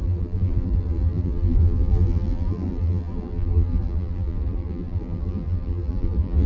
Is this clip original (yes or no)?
no